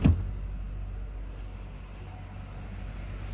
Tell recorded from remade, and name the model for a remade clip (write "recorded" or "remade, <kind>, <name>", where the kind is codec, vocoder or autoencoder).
recorded